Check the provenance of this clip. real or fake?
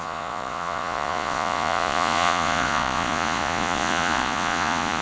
fake